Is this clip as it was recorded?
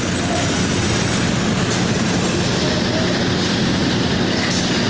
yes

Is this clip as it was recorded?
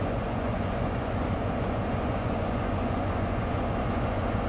no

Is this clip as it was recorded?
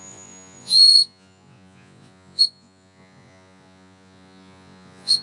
no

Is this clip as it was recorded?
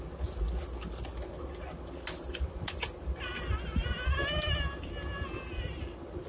yes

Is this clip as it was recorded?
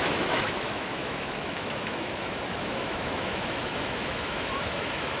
no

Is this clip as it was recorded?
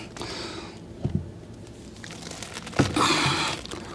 yes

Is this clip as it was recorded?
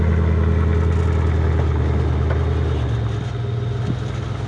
yes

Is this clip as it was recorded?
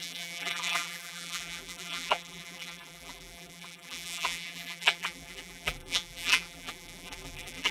no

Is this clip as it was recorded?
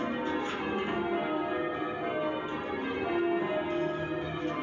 yes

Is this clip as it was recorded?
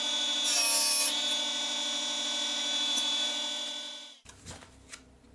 yes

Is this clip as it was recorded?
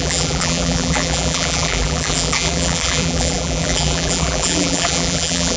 no